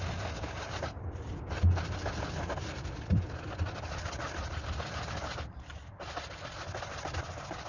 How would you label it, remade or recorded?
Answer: remade